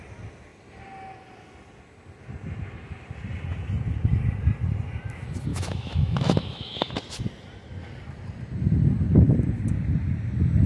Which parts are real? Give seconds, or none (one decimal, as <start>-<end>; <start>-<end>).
0.0-5.5; 6.9-10.7